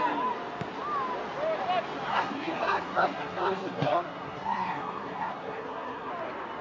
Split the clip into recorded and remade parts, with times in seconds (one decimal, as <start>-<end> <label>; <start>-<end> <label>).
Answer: 0.0-2.1 recorded; 2.1-6.1 remade; 6.1-6.6 recorded